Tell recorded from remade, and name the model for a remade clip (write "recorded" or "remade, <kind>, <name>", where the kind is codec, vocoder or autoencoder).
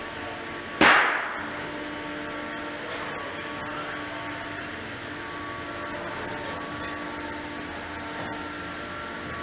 recorded